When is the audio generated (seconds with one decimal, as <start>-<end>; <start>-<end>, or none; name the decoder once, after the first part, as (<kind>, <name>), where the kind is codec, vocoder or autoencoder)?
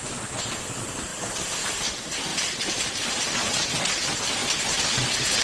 2.3-3.6 (vocoder, BigVGAN v2)